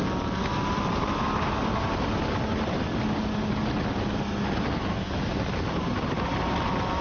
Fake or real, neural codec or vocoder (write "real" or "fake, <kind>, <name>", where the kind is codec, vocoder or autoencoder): real